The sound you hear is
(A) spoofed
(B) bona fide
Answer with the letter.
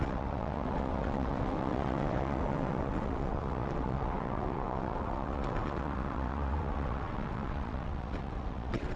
A